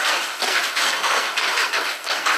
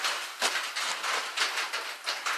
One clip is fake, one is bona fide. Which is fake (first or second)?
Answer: first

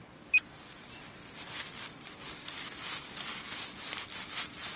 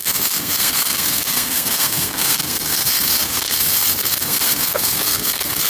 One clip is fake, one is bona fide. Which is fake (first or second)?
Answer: second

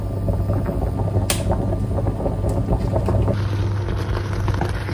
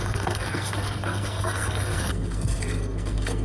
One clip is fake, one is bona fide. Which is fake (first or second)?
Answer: second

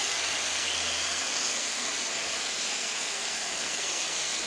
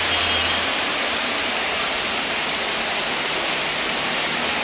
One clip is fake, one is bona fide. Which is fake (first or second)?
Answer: first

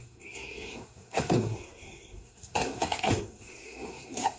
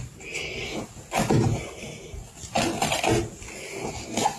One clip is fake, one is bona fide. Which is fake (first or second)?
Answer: first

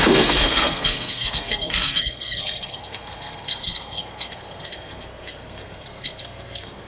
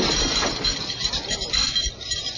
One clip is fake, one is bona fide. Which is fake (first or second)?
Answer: first